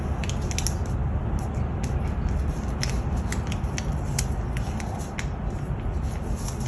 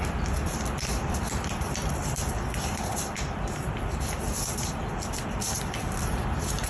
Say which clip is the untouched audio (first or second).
first